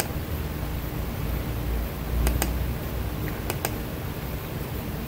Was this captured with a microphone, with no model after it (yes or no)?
yes